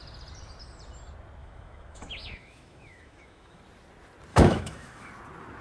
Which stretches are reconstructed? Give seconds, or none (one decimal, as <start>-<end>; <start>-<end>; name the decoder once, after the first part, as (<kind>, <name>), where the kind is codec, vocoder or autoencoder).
1.4-3.6 (autoencoder, DAC-VAE); 4.3-5.1

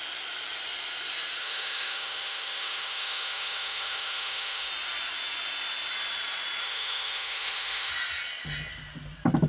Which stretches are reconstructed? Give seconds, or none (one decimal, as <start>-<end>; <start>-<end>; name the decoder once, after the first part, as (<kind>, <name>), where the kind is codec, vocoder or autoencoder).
1.4-4.7 (autoencoder, DAC-VAE); 6.6-7.9